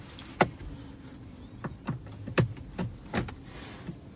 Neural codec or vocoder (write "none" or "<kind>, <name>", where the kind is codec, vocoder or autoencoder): none